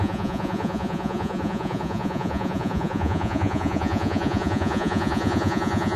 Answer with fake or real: fake